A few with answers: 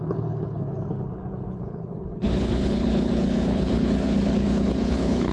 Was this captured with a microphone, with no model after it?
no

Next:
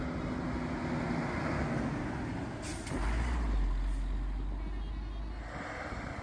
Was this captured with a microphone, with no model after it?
yes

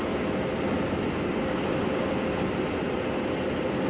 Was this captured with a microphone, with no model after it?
yes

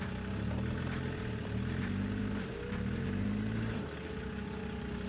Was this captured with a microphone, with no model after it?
yes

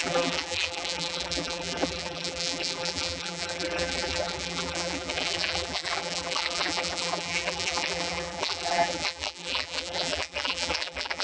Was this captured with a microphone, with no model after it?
no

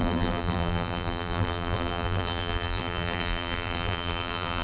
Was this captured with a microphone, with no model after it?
no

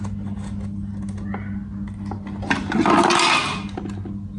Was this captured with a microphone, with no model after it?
yes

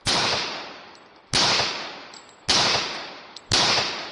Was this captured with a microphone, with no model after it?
yes